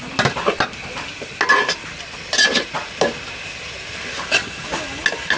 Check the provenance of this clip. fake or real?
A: real